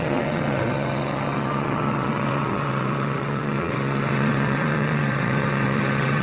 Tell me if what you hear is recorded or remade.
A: remade